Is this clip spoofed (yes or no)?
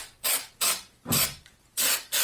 no